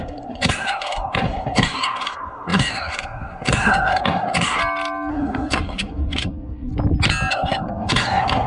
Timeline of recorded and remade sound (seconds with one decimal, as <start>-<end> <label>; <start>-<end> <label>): 0.0-4.6 remade; 4.6-5.1 recorded; 5.1-6.7 remade; 6.7-7.3 recorded; 7.3-8.5 remade